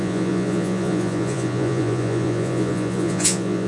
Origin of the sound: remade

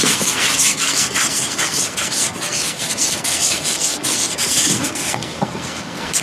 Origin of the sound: remade